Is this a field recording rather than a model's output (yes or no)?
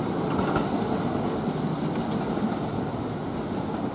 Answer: yes